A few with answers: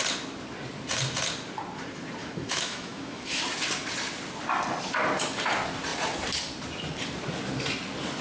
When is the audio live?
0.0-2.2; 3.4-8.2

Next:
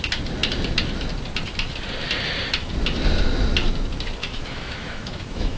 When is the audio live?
0.0-4.2

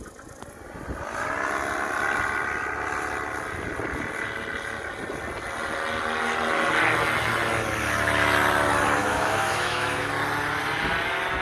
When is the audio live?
0.0-9.0; 10.1-11.4